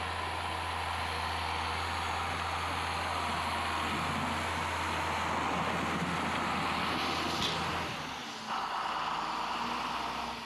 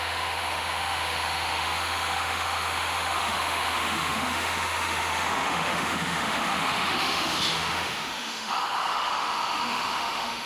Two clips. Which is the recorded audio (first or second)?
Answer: first